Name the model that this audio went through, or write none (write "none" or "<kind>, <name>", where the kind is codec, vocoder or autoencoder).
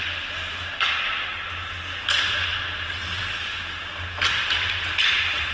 none